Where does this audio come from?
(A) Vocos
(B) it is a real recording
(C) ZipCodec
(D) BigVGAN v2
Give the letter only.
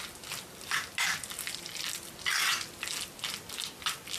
B